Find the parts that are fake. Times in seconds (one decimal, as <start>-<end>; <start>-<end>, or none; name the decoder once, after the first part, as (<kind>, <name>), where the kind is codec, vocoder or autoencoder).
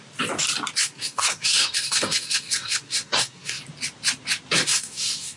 0.8-3.6 (codec, SNAC); 4.6-5.4